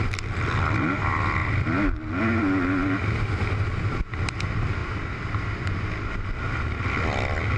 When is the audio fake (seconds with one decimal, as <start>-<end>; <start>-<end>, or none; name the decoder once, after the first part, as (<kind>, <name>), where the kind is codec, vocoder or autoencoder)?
none